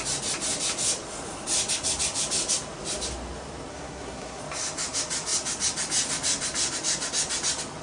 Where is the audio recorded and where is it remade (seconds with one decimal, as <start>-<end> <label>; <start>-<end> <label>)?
0.0-3.7 recorded; 3.7-4.4 remade; 4.4-7.8 recorded